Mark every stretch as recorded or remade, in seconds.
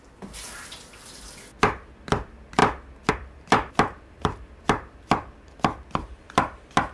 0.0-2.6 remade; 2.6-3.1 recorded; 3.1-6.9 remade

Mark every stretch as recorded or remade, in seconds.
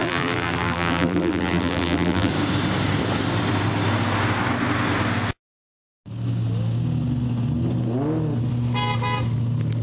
0.0-2.3 remade; 2.3-9.8 recorded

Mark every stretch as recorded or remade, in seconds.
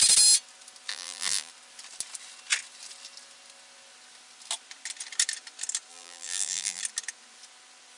0.0-0.9 recorded; 0.9-1.5 remade; 1.5-5.9 recorded; 5.9-6.8 remade; 6.8-8.0 recorded